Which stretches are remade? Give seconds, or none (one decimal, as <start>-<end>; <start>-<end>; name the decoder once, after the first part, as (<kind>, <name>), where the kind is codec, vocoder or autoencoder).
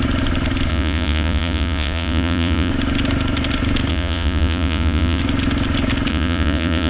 0.7-2.7 (vocoder, Vocos); 3.9-5.2; 6.1-6.9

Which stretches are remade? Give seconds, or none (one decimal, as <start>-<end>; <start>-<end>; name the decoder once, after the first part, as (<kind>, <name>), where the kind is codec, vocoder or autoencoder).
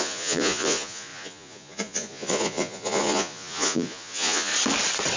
0.0-4.5 (vocoder, Vocos)